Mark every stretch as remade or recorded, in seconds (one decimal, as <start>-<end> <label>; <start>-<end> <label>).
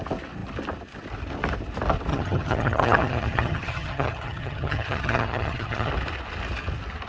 0.0-2.1 recorded; 2.1-5.9 remade; 5.9-7.1 recorded